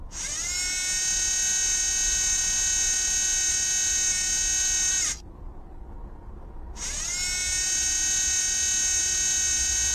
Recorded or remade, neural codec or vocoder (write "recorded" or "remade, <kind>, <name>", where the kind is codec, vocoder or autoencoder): recorded